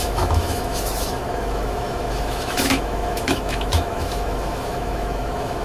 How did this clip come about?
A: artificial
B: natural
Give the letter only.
A